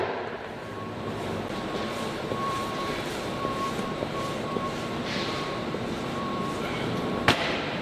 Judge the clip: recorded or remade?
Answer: remade